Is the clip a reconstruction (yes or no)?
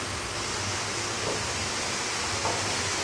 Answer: no